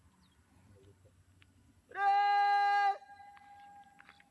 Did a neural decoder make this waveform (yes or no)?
no